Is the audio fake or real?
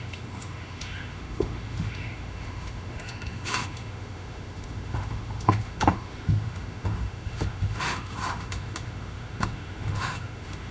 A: fake